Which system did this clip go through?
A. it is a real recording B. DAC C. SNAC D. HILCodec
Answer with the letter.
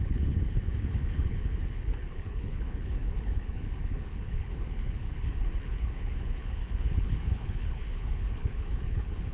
D